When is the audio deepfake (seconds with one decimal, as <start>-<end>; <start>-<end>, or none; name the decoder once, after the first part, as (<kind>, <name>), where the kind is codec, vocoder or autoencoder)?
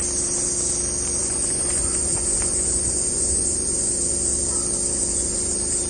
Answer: 1.2-3.9 (vocoder, Vocos); 5.0-5.5